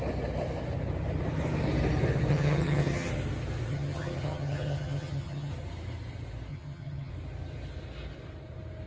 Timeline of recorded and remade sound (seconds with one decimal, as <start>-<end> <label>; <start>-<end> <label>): 0.0-2.3 recorded; 2.3-3.1 remade; 3.1-3.7 recorded; 3.7-5.5 remade; 5.5-6.5 recorded; 6.5-7.1 remade; 7.1-8.9 recorded